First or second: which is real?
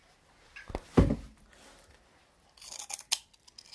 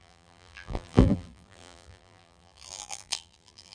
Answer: first